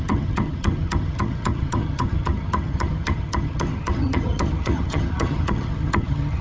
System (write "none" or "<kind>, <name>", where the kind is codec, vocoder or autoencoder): vocoder, HiFi-GAN